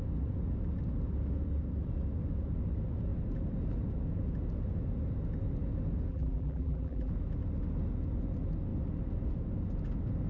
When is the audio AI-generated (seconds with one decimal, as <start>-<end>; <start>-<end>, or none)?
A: 6.1-7.1